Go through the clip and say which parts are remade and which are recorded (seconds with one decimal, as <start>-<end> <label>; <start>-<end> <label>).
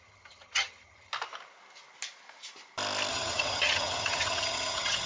0.0-1.1 remade; 1.1-3.1 recorded; 3.1-5.1 remade